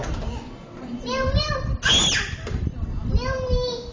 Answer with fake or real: real